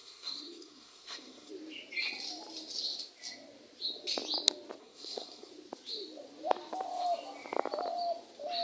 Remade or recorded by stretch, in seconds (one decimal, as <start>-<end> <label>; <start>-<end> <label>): 0.0-1.5 remade; 1.5-4.8 recorded; 4.8-5.5 remade; 5.5-8.6 recorded